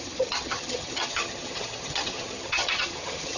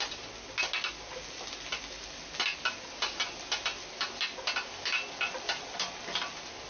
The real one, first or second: second